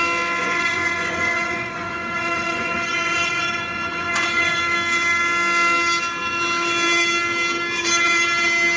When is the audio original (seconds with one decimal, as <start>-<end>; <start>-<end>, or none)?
0.0-0.4; 4.6-8.8